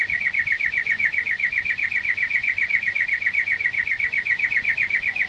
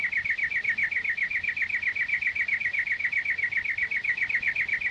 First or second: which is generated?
first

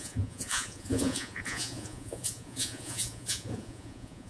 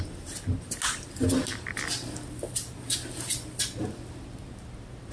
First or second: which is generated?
first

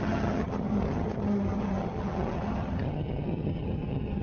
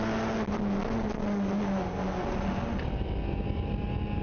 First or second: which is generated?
first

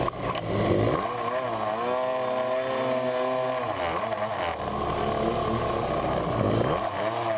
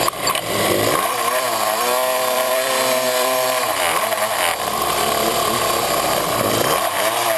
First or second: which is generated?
second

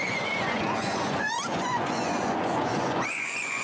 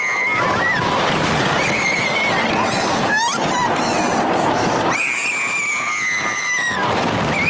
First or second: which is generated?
first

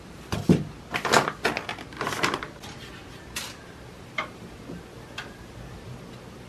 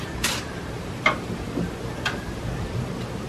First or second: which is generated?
second